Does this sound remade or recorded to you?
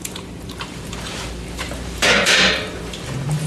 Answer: remade